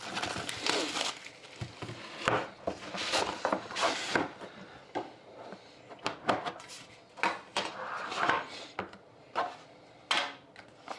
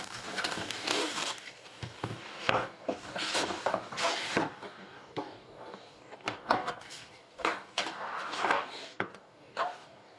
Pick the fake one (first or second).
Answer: second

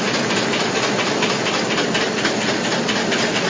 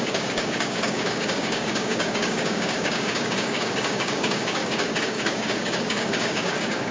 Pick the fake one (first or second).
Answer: second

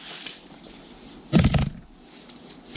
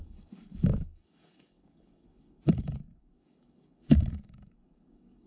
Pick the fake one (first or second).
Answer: second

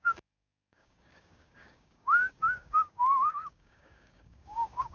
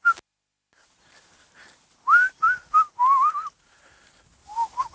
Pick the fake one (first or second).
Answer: first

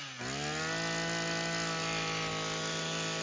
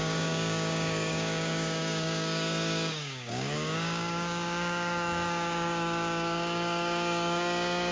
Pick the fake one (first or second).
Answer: second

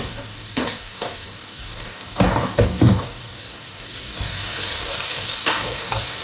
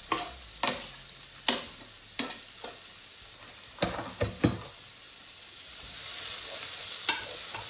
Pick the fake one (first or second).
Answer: first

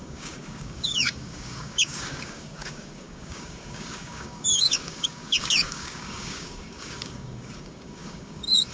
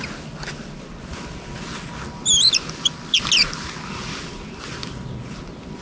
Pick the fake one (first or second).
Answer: first